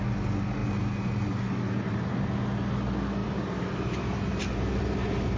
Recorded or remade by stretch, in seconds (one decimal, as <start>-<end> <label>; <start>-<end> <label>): 0.0-0.6 recorded; 0.6-2.0 remade; 2.0-3.2 recorded; 3.2-5.4 remade